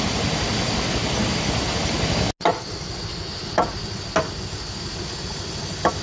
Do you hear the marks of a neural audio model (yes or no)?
no